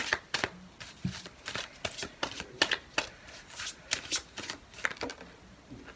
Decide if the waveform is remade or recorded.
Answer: recorded